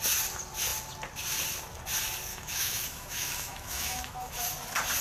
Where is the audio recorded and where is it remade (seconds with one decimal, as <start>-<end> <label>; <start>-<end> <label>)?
0.0-2.3 recorded; 2.3-4.4 remade; 4.4-5.0 recorded

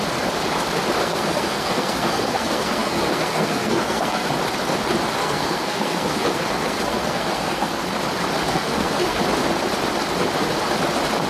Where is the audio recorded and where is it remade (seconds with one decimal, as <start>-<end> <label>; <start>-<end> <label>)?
0.0-1.0 recorded; 1.0-4.3 remade; 4.3-5.2 recorded; 5.2-7.8 remade; 7.8-8.5 recorded; 8.5-9.2 remade; 9.2-11.3 recorded

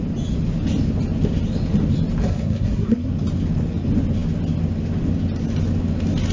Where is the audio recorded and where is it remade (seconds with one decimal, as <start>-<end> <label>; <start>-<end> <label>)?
0.0-2.2 recorded; 2.2-3.1 remade; 3.1-6.3 recorded